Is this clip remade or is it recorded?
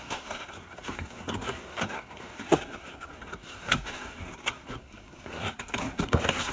remade